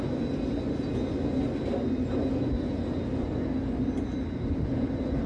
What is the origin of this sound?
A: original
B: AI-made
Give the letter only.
A